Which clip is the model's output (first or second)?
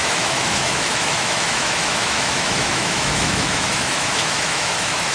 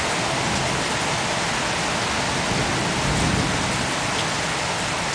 first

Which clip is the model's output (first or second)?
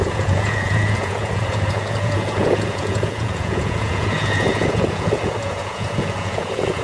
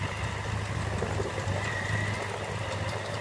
first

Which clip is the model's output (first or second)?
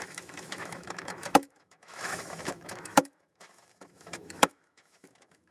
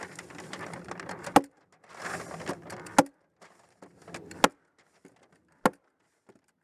first